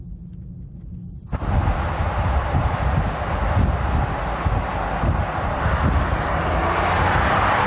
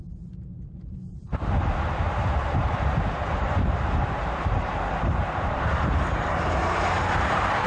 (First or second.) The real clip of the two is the first